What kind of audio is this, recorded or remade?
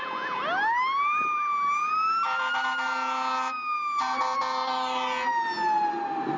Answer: recorded